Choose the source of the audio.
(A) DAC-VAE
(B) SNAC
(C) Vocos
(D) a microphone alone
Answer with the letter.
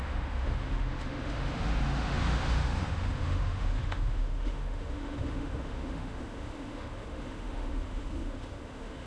A